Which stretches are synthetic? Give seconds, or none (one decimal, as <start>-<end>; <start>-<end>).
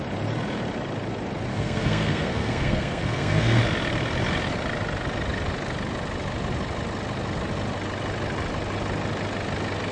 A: 1.5-3.6